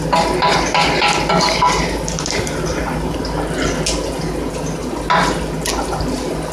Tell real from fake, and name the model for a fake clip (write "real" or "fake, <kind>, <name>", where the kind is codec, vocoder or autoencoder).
real